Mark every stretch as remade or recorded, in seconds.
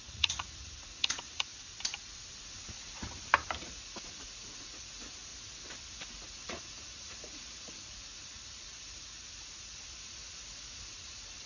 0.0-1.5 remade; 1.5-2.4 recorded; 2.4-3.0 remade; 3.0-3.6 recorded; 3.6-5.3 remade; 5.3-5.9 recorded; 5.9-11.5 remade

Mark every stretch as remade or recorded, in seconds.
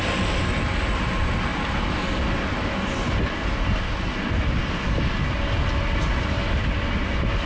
0.0-7.5 recorded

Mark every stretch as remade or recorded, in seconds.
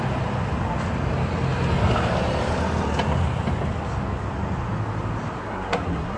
0.0-5.4 recorded; 5.4-6.2 remade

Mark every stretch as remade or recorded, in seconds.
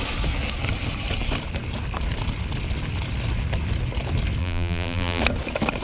0.0-4.4 recorded; 4.4-5.2 remade; 5.2-5.8 recorded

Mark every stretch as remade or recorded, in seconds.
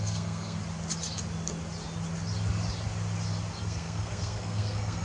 0.0-0.6 remade; 0.6-3.6 recorded; 3.6-5.0 remade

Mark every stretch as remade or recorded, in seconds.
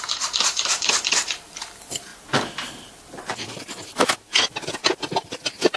0.0-2.1 remade; 2.1-5.8 recorded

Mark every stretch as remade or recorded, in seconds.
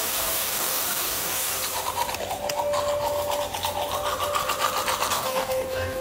0.0-1.5 remade; 1.5-5.1 recorded; 5.1-6.0 remade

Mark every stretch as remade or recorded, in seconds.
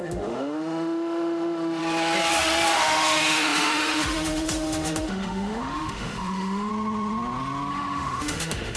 0.0-1.8 remade; 1.8-2.3 recorded; 2.3-6.7 remade; 6.7-7.7 recorded; 7.7-8.8 remade